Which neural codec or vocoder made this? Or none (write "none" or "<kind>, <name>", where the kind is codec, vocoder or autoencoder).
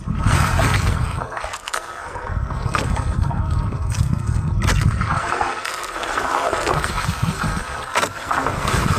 codec, SNAC